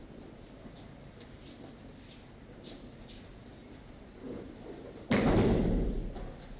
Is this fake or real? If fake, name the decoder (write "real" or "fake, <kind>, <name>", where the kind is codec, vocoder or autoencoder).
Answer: real